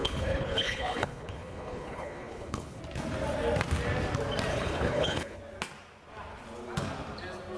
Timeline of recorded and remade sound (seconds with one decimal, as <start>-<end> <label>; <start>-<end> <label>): 0.0-2.8 remade; 2.8-4.5 recorded; 4.5-5.4 remade; 5.4-7.6 recorded